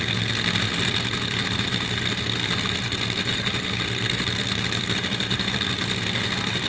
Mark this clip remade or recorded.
recorded